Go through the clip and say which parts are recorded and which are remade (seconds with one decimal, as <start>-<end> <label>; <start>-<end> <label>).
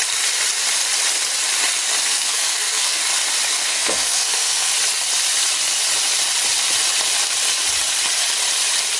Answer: 0.0-2.1 recorded; 2.1-3.0 remade; 3.0-3.6 recorded; 3.6-4.7 remade; 4.7-9.0 recorded